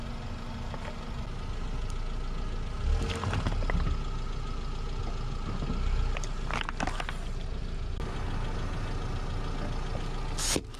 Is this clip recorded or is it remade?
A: recorded